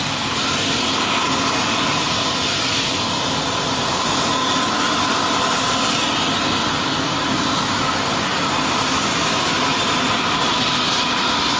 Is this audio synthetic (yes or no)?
no